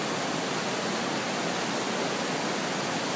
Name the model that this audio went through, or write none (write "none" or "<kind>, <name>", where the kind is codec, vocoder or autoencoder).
none